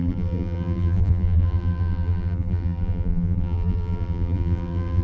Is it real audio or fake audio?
fake